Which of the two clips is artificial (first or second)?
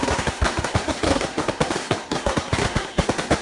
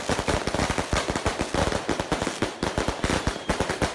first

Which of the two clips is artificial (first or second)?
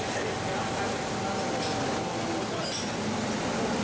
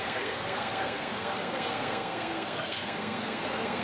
second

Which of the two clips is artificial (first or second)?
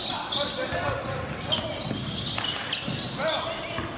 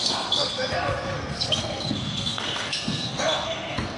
second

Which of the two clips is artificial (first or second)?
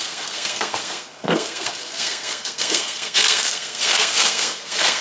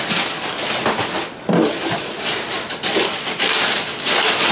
first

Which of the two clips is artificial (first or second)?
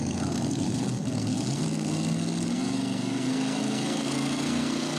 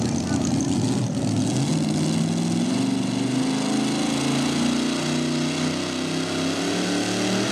first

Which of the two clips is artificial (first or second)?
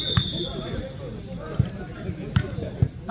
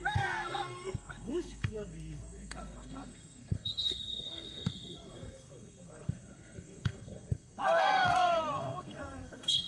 second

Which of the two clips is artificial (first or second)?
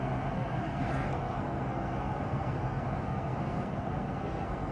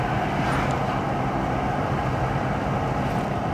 first